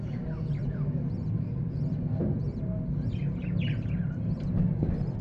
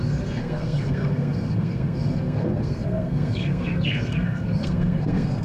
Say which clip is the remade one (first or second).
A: second